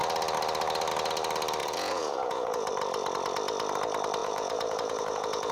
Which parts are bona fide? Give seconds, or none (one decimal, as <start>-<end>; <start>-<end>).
0.0-1.6; 2.7-4.2